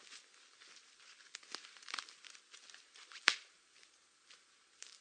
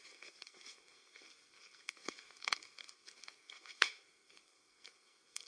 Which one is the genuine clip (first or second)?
first